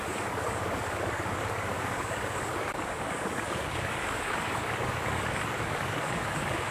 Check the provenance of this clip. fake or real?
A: fake